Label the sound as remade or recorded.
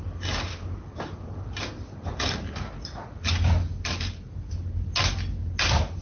recorded